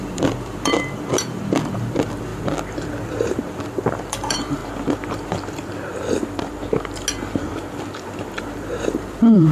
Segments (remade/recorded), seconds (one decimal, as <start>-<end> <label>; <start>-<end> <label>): 0.0-4.6 remade; 4.6-8.4 recorded; 8.4-9.5 remade